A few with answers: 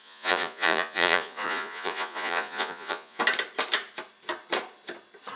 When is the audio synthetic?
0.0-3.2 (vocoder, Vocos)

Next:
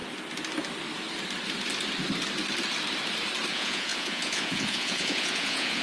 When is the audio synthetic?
3.5-5.8 (vocoder, Vocos)

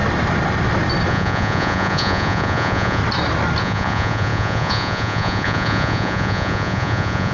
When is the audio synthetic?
1.1-3.0 (vocoder, Vocos); 3.6-7.3

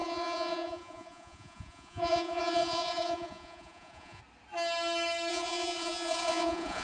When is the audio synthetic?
0.0-4.2 (vocoder, Vocos); 5.3-6.8

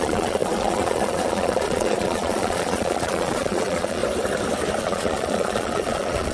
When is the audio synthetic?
0.0-4.0 (vocoder, Vocos); 4.8-6.3

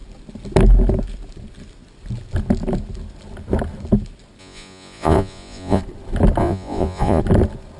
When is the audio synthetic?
4.4-5.8 (vocoder, Vocos); 6.4-7.2